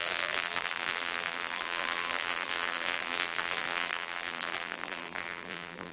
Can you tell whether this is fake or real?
fake